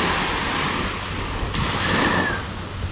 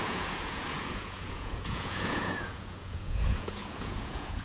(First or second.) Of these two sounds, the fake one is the second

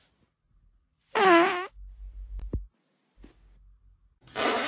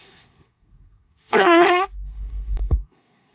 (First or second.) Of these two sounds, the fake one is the second